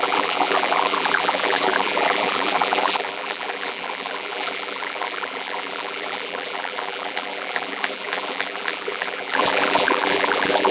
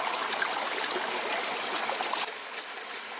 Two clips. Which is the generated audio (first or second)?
first